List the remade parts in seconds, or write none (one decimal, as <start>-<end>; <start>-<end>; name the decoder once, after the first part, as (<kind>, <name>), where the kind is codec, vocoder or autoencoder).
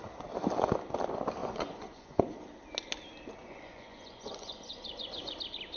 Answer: 1.4-2.2 (vocoder, Vocos); 3.4-5.3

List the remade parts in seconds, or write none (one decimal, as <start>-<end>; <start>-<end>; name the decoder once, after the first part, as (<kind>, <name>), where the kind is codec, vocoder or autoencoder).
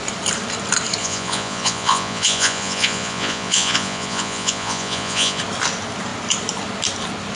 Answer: 1.0-5.4 (vocoder, Vocos)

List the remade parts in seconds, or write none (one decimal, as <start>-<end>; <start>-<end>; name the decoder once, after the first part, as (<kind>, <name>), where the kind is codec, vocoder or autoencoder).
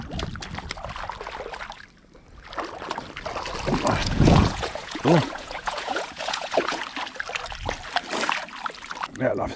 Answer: 4.0-6.8 (vocoder, Vocos)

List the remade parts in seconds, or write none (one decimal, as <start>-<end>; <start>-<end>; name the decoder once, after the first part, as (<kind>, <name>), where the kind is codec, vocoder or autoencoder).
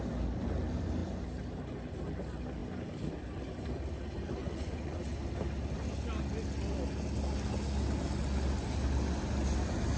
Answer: 4.4-5.0 (vocoder, Vocos)